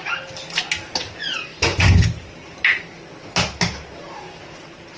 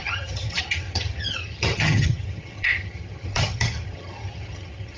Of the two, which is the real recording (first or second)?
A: first